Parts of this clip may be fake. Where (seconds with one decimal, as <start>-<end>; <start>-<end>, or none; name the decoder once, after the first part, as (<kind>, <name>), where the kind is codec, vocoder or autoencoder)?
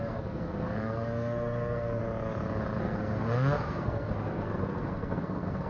0.0-2.0 (codec, SNAC); 2.8-5.7